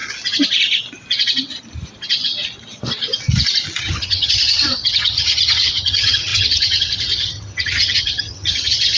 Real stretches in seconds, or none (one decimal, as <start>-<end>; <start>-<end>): 0.0-3.8